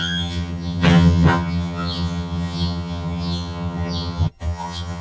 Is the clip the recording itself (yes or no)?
no